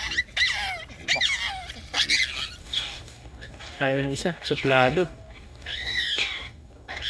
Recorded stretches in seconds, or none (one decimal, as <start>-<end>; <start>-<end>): 0.0-2.6